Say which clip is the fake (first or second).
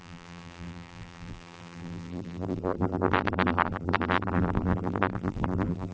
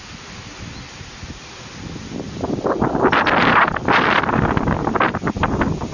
first